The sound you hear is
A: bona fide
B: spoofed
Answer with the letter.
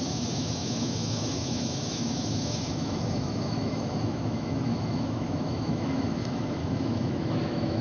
B